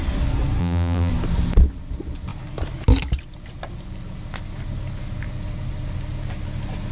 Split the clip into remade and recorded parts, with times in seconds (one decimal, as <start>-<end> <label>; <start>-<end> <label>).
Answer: 0.0-0.6 recorded; 0.6-1.1 remade; 1.1-6.9 recorded